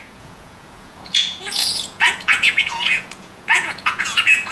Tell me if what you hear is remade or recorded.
remade